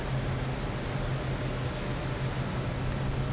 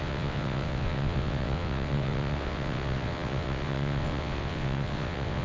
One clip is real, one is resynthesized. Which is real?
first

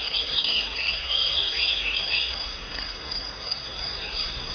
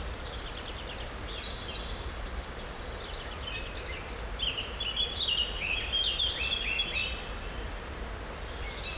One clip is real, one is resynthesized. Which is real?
second